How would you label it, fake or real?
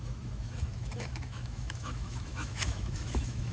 fake